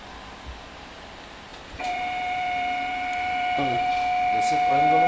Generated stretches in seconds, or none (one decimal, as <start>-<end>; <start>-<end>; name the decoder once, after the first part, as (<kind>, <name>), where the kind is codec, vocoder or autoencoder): 1.5-3.9 (vocoder, BigVGAN v2)